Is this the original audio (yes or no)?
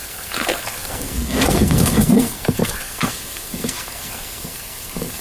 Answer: no